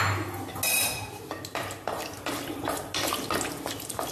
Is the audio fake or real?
real